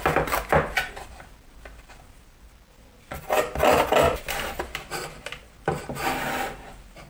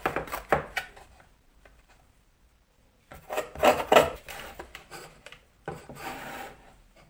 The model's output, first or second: second